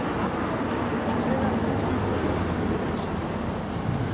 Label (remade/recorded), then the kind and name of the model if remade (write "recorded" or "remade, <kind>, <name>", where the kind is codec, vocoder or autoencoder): recorded